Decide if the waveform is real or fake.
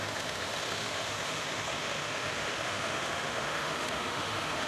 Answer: fake